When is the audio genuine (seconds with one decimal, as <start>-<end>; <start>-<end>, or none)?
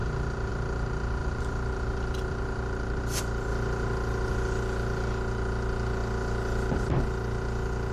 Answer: 0.0-1.2; 3.0-7.9